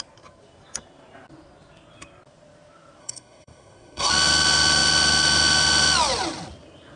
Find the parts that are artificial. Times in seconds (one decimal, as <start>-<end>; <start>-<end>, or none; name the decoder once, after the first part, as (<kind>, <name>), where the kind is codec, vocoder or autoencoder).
3.0-4.1 (codec, SNAC)